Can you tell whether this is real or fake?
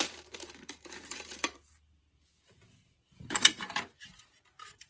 fake